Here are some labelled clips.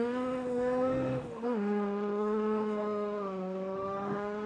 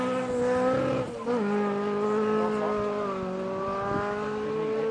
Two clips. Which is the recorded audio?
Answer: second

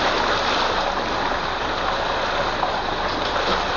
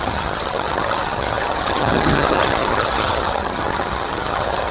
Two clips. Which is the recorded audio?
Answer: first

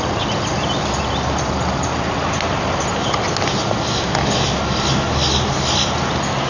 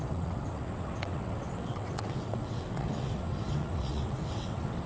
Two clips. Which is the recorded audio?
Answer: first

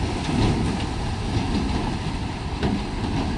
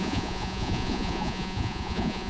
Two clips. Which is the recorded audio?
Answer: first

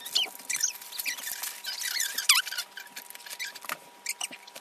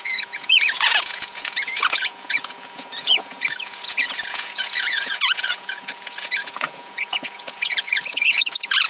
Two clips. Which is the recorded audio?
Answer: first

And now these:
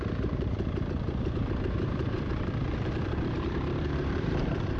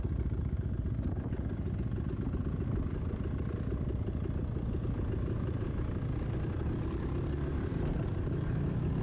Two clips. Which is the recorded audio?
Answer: second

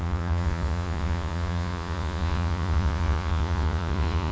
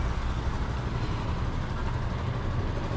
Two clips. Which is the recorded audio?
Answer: second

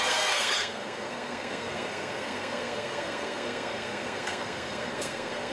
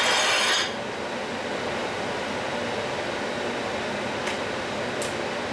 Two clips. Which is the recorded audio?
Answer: second